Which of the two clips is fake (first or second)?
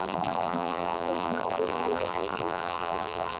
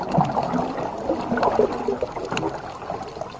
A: first